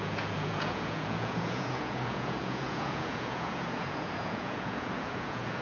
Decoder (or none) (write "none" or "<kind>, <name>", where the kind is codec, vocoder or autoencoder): vocoder, Vocos